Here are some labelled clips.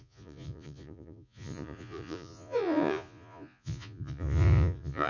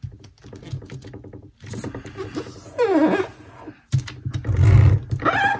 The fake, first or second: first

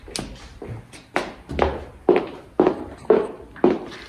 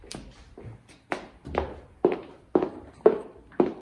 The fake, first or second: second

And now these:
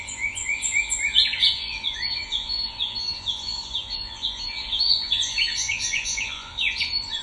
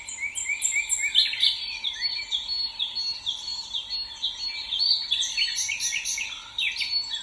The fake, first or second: first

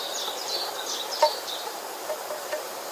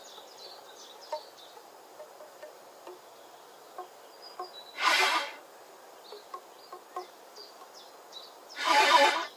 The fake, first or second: first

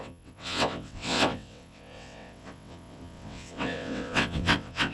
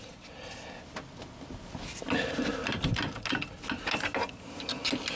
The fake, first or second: first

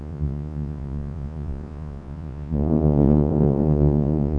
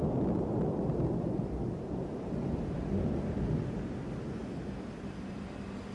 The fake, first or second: first